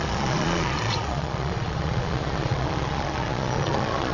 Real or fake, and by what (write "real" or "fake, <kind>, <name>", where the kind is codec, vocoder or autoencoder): fake, vocoder, Vocos